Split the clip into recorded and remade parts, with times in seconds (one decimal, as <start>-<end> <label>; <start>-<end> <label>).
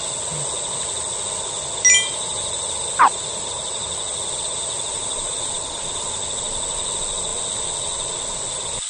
0.0-8.9 recorded